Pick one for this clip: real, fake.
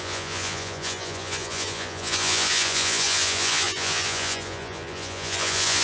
fake